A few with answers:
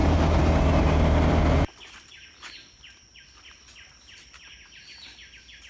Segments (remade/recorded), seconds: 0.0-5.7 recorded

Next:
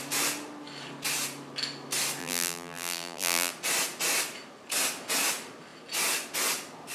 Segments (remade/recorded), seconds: 0.0-2.2 recorded; 2.2-3.5 remade; 3.5-6.9 recorded

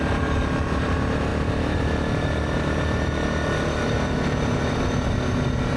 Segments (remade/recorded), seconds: 0.0-5.8 recorded

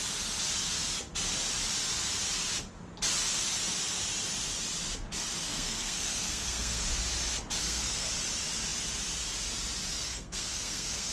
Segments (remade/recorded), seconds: 0.0-5.5 recorded; 5.5-6.9 remade; 6.9-7.6 recorded; 7.6-8.1 remade; 8.1-9.9 recorded; 9.9-11.1 remade

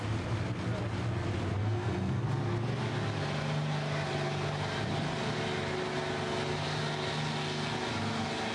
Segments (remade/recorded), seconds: 0.0-1.6 recorded; 1.6-2.2 remade; 2.2-8.5 recorded

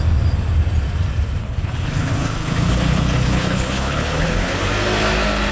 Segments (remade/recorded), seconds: 0.0-1.4 recorded; 1.4-4.7 remade; 4.7-5.5 recorded

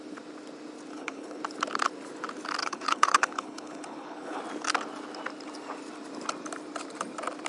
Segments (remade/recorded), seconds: 0.0-0.9 recorded; 0.9-1.4 remade; 1.4-2.6 recorded; 2.6-4.4 remade; 4.4-7.5 recorded

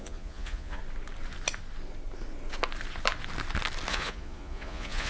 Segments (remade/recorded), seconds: 0.0-0.8 remade; 0.8-3.9 recorded; 3.9-5.1 remade